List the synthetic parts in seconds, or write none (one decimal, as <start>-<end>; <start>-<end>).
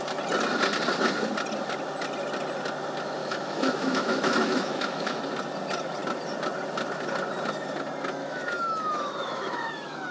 3.2-5.2; 8.2-10.1